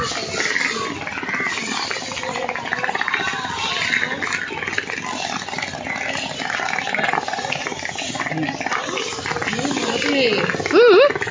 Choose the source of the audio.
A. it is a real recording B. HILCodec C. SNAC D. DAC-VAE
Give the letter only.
A